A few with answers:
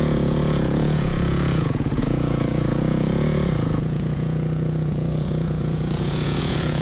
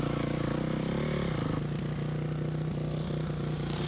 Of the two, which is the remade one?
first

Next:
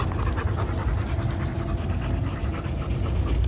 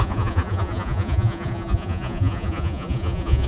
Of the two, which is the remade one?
second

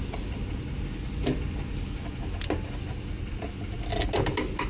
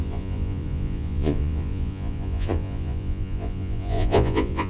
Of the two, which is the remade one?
second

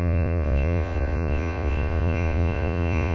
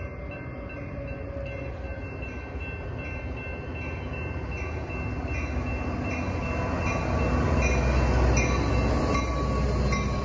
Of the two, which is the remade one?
first